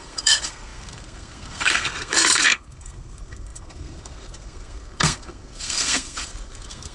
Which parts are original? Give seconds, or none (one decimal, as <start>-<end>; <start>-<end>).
none